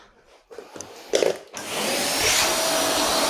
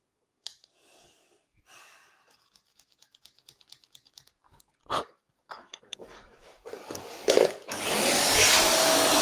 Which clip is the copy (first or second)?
second